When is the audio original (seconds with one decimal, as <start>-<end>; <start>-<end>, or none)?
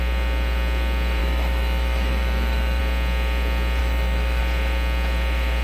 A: 0.0-1.2; 2.8-3.8; 4.4-5.6